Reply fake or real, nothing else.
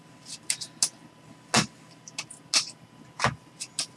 real